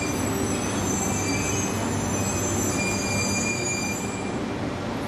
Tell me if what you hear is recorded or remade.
recorded